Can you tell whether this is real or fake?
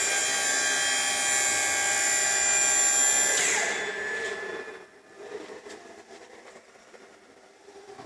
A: real